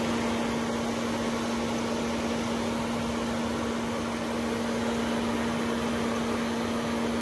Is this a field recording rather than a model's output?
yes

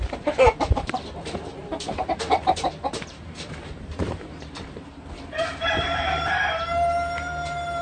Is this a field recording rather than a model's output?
no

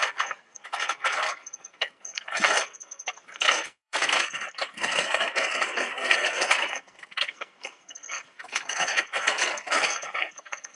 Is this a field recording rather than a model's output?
no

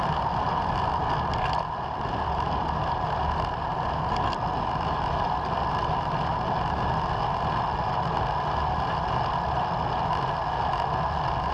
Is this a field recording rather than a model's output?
yes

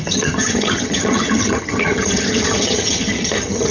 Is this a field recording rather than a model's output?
no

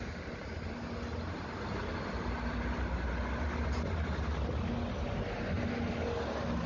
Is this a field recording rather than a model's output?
yes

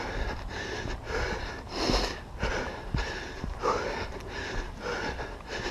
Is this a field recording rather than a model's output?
yes